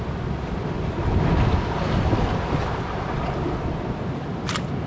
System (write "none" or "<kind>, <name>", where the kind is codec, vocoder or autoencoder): none